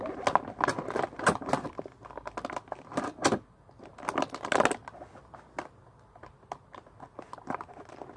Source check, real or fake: real